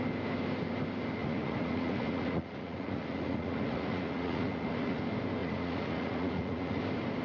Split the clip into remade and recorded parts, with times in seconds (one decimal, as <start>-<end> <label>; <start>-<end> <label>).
0.0-1.2 recorded; 1.2-5.0 remade; 5.0-5.4 recorded; 5.4-6.8 remade; 6.8-7.2 recorded